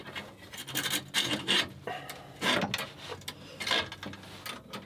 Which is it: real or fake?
real